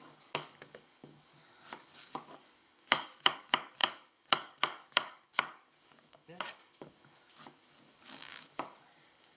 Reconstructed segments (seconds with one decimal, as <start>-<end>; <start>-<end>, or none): 0.0-9.4

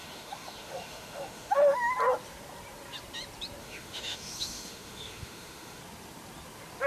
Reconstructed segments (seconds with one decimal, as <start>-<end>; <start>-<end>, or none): 0.0-1.9; 3.6-5.8

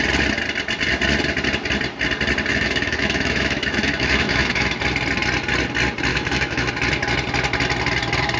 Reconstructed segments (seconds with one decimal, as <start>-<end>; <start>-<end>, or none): 2.5-4.8; 6.1-6.7